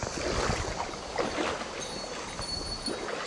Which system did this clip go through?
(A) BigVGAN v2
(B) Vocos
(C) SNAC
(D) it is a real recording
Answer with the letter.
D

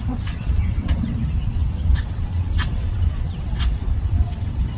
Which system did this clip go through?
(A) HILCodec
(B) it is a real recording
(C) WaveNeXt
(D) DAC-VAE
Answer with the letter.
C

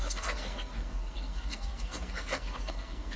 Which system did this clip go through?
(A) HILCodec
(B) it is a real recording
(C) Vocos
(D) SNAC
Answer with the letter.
D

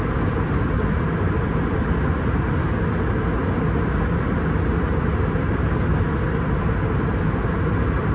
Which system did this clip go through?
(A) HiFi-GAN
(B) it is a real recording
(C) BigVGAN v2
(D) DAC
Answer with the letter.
B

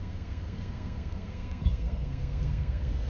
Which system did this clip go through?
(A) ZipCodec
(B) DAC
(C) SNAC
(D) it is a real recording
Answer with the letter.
C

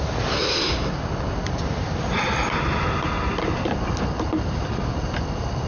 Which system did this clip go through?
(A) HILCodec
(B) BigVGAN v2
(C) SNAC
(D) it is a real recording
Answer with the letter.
D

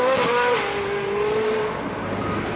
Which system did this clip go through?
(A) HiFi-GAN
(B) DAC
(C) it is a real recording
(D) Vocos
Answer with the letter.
C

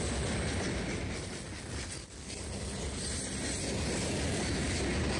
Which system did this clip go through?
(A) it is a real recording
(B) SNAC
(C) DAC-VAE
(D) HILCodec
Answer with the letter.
A